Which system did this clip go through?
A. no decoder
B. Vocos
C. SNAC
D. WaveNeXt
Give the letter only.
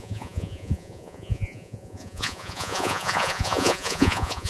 B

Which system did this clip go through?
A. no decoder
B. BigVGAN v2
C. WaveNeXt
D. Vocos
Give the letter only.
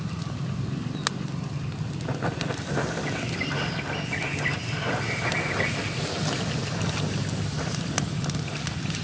A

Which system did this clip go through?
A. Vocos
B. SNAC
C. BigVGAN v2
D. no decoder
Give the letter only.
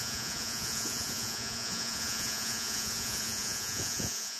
A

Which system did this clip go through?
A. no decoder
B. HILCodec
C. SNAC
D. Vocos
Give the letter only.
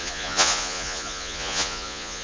D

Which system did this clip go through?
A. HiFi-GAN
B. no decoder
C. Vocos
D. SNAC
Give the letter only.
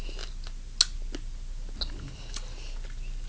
B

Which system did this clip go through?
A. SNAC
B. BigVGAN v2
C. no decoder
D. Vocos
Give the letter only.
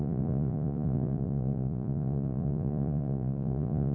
D